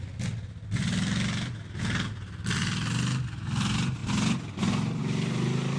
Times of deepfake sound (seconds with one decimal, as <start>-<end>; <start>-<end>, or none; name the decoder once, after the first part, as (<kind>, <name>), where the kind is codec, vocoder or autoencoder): none